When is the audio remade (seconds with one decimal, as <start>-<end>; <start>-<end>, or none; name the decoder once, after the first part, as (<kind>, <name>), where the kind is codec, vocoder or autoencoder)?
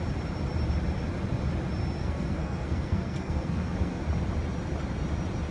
2.0-4.0 (codec, SNAC)